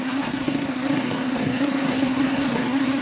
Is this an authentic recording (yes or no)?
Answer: no